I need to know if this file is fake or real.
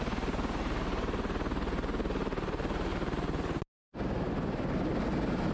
real